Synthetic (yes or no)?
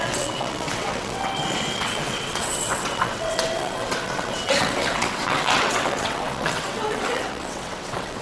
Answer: yes